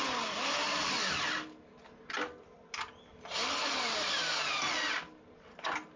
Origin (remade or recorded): recorded